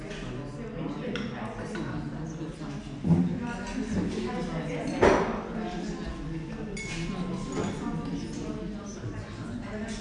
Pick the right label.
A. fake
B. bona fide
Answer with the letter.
B